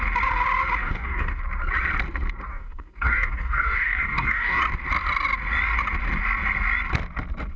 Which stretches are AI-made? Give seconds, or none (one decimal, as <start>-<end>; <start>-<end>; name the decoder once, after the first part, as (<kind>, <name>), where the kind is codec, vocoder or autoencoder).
0.8-1.4 (codec, DAC); 2.5-4.6